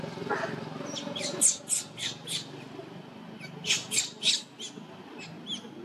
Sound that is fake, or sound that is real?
real